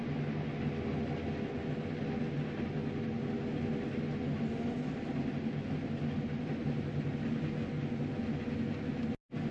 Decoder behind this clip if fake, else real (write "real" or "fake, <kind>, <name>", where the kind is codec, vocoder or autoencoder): real